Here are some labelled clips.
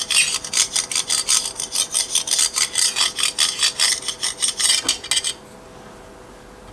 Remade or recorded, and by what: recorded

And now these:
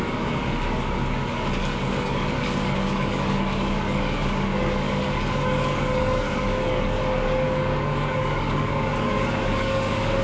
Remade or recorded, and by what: remade, codec, DAC